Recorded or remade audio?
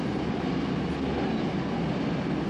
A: recorded